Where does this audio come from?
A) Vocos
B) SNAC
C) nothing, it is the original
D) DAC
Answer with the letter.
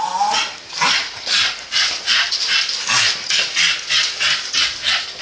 C